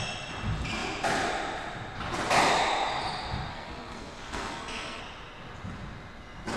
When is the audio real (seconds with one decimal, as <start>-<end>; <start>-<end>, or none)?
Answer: 0.0-3.5; 5.0-6.6